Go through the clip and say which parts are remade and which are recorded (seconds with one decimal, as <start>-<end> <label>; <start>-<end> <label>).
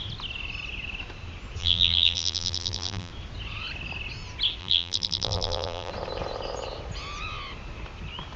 0.0-1.6 recorded; 1.6-3.1 remade; 3.1-4.6 recorded; 4.6-5.9 remade; 5.9-8.4 recorded